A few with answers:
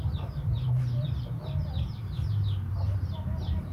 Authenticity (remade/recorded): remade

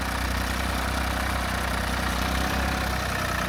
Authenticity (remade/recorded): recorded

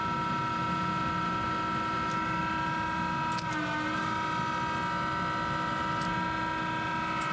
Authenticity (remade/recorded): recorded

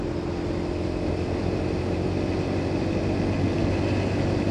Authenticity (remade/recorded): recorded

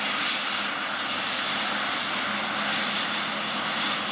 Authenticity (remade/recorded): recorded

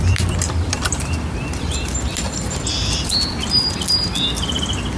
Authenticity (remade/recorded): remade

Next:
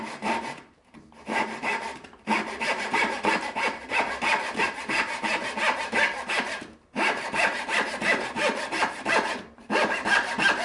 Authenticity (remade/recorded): remade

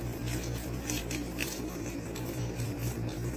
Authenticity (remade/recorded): remade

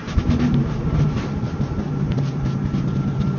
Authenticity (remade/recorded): remade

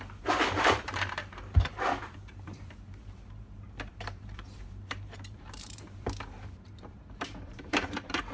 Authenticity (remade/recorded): remade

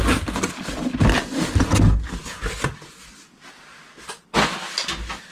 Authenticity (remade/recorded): recorded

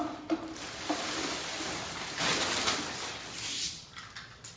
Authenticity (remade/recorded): recorded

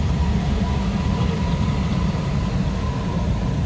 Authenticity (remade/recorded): recorded